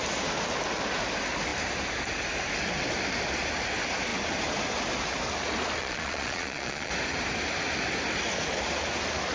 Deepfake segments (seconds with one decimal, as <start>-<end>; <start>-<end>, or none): 5.8-6.9